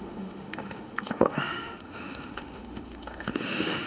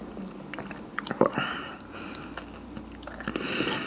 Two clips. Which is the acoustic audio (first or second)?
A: second